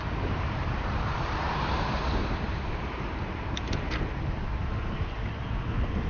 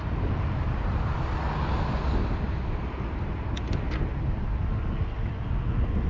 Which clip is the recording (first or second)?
second